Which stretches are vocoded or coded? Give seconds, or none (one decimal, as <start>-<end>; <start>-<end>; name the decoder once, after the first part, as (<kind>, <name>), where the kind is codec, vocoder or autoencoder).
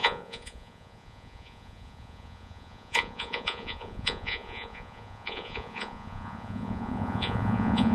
0.0-7.9 (vocoder, Vocos)